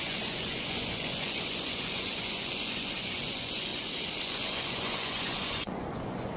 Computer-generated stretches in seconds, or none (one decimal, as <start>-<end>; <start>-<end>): 0.0-3.7; 4.2-6.4